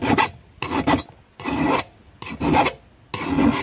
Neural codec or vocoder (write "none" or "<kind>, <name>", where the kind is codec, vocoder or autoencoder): none